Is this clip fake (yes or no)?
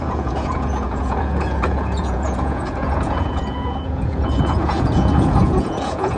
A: yes